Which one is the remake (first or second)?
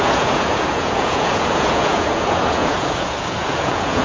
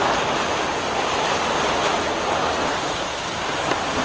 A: first